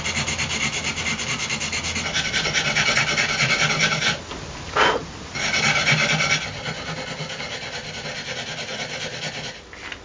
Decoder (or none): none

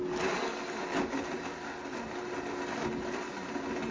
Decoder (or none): none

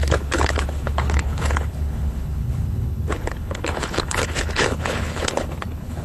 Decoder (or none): codec, HILCodec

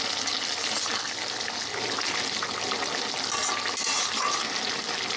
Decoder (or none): none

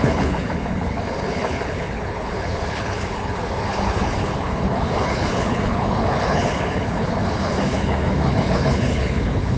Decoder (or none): codec, HILCodec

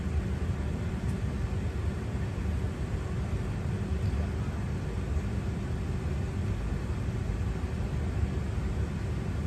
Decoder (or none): none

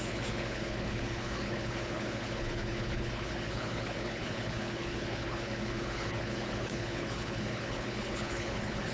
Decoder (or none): codec, HILCodec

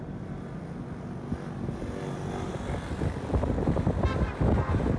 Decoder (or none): none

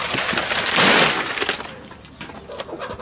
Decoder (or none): none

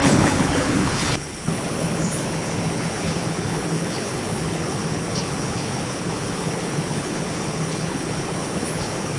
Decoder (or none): codec, HILCodec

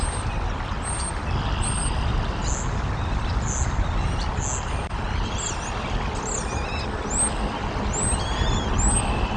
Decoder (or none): none